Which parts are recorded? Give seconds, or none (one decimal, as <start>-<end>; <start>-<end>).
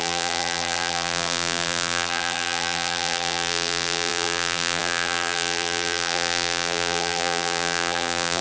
none